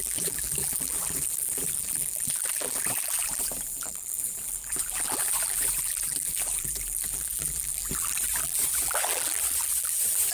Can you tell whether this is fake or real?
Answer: fake